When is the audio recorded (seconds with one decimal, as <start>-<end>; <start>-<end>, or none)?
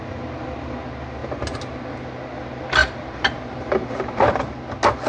0.0-2.8; 4.6-5.1